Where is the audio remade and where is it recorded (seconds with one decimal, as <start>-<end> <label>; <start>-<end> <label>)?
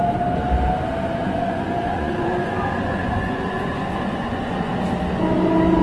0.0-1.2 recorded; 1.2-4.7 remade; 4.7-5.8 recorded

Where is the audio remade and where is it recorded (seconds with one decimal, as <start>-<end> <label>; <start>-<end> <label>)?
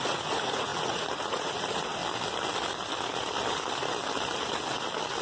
0.0-2.0 remade; 2.0-5.2 recorded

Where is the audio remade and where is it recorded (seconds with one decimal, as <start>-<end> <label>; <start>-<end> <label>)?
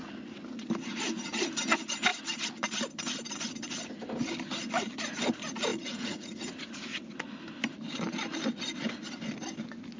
0.0-5.7 recorded; 5.7-6.5 remade; 6.5-10.0 recorded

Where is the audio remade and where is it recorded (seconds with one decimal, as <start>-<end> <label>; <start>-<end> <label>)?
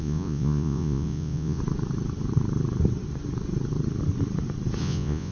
0.0-1.6 remade; 1.6-4.8 recorded; 4.8-5.3 remade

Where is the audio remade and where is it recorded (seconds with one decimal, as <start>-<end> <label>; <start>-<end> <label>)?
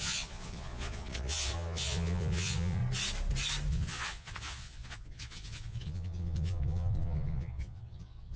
0.0-2.8 remade; 2.8-3.7 recorded; 3.7-8.4 remade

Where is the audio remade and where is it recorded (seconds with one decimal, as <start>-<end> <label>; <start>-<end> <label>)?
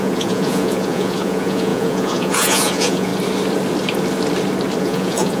0.0-3.1 remade; 3.1-4.8 recorded; 4.8-5.4 remade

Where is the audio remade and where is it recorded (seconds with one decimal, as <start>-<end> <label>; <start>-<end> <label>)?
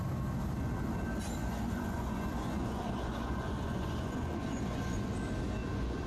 0.0-1.4 recorded; 1.4-5.1 remade; 5.1-5.6 recorded; 5.6-6.1 remade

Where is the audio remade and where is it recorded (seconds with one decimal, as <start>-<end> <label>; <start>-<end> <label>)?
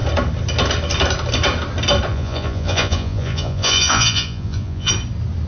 0.0-2.1 recorded; 2.1-4.9 remade; 4.9-5.5 recorded